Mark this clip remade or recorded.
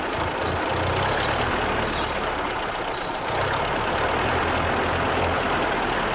recorded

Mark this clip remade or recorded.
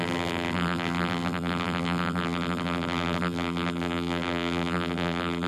remade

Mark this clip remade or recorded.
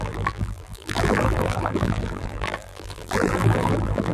remade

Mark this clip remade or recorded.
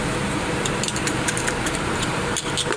remade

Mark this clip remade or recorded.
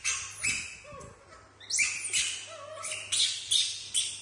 recorded